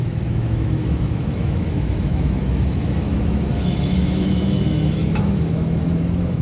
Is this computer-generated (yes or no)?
yes